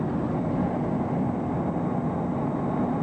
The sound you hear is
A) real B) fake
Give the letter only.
A